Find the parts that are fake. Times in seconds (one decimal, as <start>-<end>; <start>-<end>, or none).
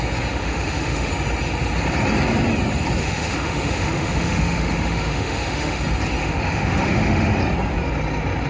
0.4-1.1; 3.0-5.8; 6.2-7.4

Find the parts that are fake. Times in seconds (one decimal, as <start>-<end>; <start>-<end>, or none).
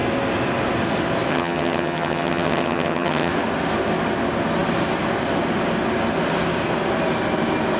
1.3-3.3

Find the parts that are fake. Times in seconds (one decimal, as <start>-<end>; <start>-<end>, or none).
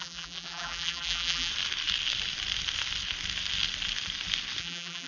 0.0-1.5; 4.6-5.1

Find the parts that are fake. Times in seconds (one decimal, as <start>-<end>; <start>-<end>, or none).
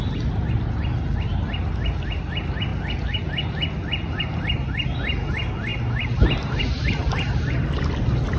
none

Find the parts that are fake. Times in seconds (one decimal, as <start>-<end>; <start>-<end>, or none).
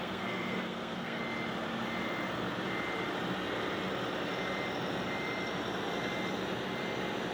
0.0-1.2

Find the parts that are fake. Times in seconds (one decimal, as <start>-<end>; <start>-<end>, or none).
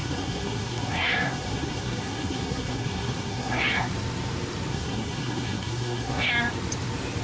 0.0-3.9; 4.7-6.3